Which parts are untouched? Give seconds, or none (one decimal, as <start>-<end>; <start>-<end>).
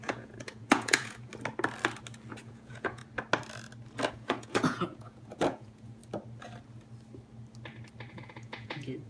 1.3-2.3; 3.0-4.1; 6.0-8.1